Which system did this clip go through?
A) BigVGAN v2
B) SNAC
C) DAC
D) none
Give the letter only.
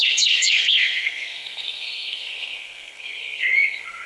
B